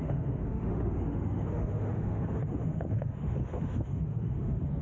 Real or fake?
fake